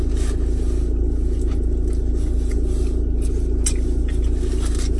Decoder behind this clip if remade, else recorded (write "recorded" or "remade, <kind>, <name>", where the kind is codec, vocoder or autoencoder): recorded